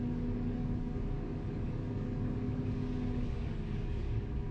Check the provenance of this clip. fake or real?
fake